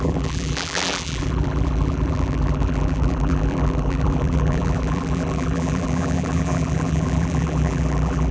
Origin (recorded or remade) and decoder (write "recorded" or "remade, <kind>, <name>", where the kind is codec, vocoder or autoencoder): remade, vocoder, BigVGAN v2